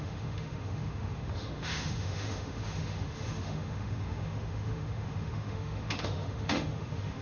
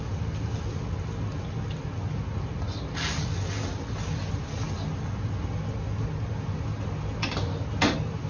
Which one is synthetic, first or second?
first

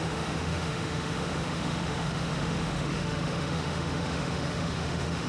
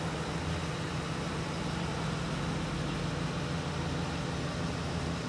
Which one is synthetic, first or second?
first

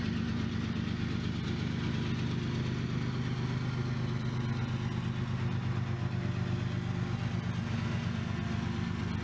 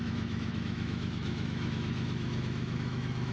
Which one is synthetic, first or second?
second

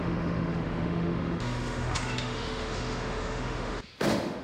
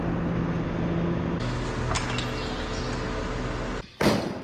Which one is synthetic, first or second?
first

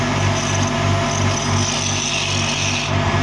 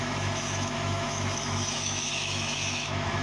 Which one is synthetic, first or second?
second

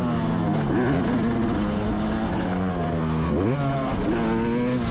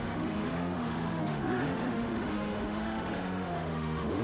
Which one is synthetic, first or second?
second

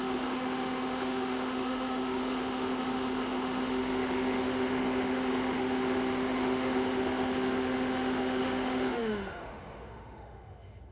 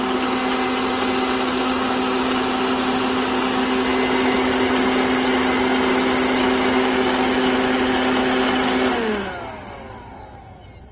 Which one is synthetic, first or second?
first